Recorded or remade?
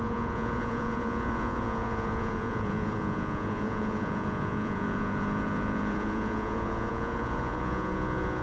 remade